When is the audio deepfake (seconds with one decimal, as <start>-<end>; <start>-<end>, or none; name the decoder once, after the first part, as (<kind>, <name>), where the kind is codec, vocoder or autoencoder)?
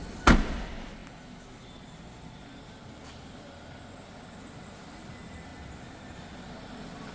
none